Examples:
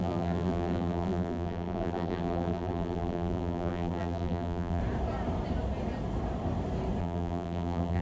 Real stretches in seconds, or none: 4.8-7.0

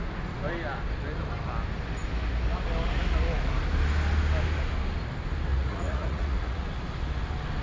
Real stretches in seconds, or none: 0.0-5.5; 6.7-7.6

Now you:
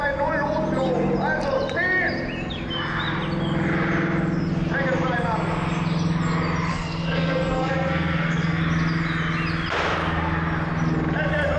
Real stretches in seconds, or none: 0.0-6.7; 8.6-11.6

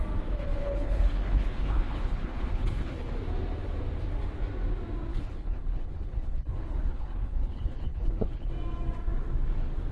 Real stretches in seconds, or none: 0.0-0.4; 3.1-5.1; 8.5-9.9